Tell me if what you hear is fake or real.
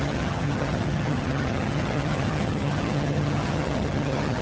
fake